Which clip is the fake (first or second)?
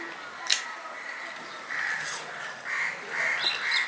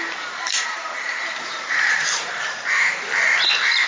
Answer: second